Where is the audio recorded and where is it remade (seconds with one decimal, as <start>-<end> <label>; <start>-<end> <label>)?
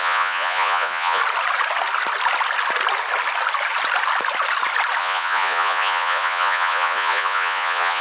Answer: 0.0-1.2 remade; 1.2-5.0 recorded; 5.0-8.0 remade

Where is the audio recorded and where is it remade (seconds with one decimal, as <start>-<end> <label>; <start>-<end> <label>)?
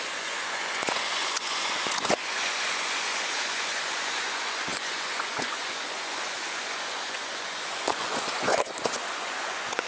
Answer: 0.0-9.9 remade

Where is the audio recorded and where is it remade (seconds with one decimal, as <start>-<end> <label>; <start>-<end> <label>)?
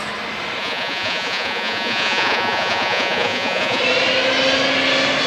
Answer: 0.0-0.6 recorded; 0.6-3.8 remade; 3.8-5.3 recorded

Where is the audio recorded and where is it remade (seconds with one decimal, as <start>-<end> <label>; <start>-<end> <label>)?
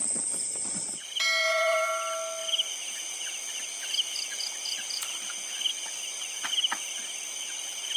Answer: 0.0-1.4 recorded; 1.4-2.0 remade; 2.0-8.0 recorded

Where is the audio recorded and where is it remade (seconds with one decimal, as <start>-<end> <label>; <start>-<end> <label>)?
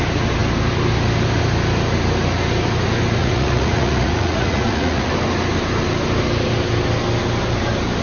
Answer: 0.0-3.2 recorded; 3.2-5.1 remade; 5.1-8.0 recorded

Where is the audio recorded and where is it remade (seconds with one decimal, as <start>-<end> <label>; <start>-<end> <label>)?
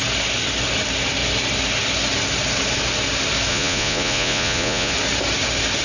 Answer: 0.0-3.5 recorded; 3.5-4.9 remade; 4.9-5.8 recorded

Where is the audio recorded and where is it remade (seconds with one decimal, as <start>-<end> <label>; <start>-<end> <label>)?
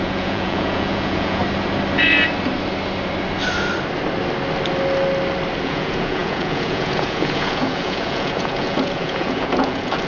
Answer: 0.0-1.4 remade; 1.4-5.6 recorded; 5.6-10.1 remade